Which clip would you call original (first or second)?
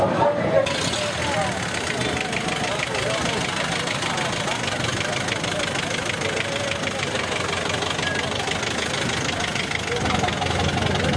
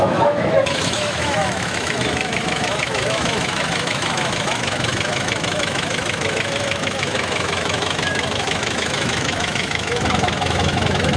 first